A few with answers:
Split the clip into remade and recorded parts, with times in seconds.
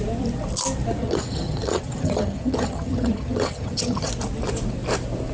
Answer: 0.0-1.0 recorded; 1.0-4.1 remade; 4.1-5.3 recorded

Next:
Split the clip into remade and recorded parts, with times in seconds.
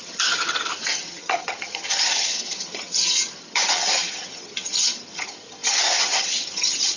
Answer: 0.0-7.0 remade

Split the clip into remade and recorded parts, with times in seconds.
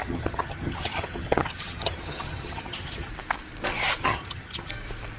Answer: 0.0-3.1 remade; 3.1-4.0 recorded; 4.0-4.7 remade; 4.7-5.2 recorded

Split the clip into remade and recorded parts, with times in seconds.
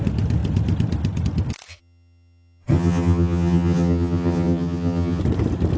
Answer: 0.0-1.7 recorded; 1.7-5.2 remade; 5.2-5.8 recorded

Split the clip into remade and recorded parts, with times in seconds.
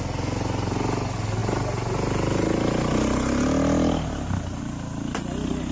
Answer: 0.0-5.7 recorded